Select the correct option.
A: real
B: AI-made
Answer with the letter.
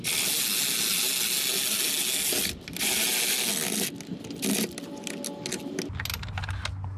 A